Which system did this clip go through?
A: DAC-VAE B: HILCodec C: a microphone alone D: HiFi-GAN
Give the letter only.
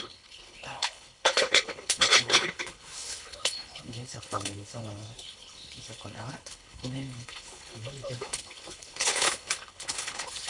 B